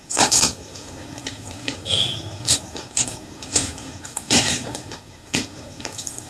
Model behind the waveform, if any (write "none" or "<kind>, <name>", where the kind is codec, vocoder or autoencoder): codec, SNAC